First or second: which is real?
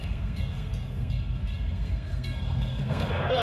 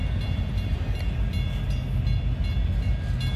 second